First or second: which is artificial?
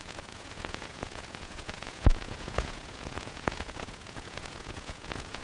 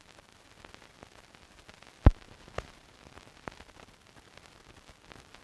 first